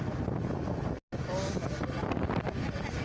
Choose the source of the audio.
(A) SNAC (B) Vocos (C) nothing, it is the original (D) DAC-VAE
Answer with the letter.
C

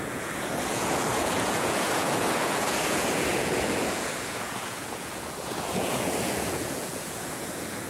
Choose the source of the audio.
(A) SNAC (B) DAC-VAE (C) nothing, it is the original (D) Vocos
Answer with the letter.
D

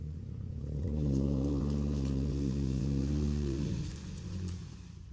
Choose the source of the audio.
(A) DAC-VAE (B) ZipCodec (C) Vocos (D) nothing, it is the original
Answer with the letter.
C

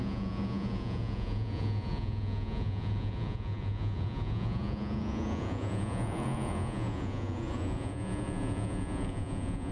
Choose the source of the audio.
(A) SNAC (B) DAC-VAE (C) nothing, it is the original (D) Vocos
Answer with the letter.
D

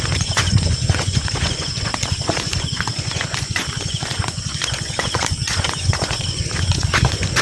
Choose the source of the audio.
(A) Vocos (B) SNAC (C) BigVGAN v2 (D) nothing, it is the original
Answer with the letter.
A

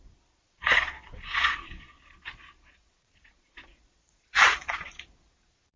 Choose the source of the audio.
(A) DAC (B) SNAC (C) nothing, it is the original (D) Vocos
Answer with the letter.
D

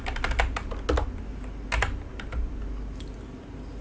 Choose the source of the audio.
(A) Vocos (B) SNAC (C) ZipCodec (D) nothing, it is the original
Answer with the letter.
D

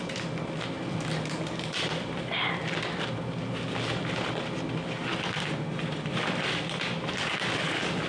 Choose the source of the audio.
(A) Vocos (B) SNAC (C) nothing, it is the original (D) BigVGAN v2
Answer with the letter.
C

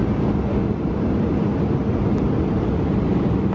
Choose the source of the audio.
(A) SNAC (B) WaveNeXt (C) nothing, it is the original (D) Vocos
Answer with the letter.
C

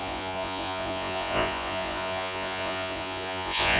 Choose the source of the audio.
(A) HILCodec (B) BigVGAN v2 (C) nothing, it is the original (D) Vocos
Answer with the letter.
D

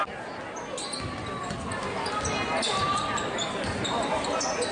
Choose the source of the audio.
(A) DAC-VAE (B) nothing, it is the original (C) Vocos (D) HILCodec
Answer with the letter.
B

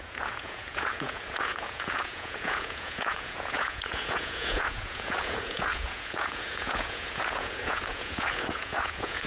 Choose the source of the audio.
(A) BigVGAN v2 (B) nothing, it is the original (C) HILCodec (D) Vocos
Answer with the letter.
D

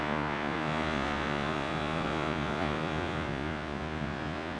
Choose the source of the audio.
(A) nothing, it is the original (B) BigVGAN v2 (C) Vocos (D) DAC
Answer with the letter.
C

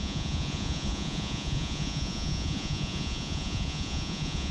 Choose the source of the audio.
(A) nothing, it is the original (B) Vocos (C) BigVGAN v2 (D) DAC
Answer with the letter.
B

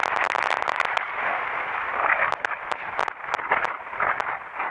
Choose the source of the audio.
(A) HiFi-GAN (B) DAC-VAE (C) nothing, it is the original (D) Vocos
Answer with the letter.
C